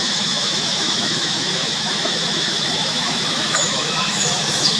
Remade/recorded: remade